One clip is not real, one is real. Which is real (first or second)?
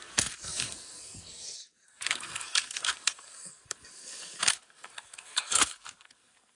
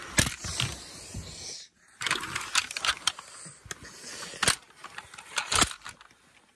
second